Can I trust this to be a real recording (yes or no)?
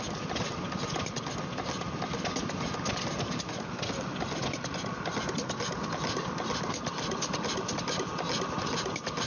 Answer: yes